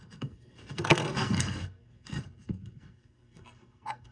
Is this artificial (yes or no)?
yes